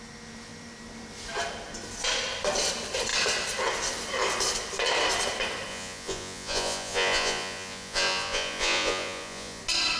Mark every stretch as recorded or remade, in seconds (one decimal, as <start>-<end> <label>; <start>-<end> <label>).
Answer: 0.0-5.7 recorded; 5.7-9.6 remade; 9.6-10.0 recorded